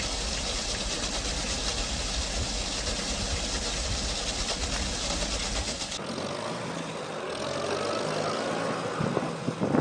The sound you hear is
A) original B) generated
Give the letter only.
A